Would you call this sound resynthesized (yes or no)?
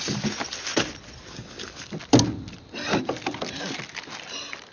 no